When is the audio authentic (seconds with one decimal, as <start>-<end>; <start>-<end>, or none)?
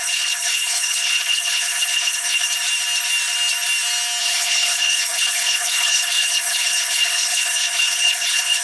2.5-4.2